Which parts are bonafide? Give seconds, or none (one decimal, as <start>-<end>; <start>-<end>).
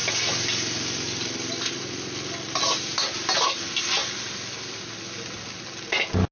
0.0-6.3